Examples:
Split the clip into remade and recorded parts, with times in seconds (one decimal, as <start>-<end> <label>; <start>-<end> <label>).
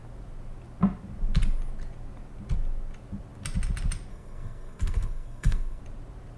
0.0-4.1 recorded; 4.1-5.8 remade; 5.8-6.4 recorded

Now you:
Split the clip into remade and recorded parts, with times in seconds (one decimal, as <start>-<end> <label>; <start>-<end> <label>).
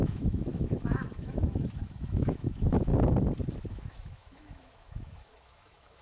0.0-2.9 remade; 2.9-3.7 recorded; 3.7-6.0 remade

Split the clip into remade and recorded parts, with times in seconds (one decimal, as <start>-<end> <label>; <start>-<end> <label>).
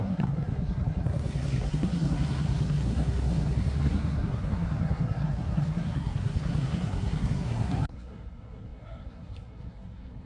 0.0-10.3 remade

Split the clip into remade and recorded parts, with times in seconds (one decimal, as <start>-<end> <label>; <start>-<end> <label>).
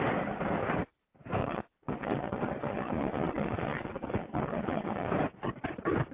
0.0-1.4 recorded; 1.4-5.1 remade; 5.1-6.1 recorded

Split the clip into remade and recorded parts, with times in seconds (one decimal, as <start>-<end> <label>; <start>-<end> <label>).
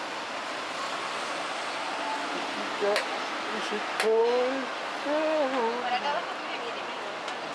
0.0-7.5 recorded